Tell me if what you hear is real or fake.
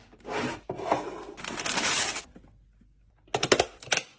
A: real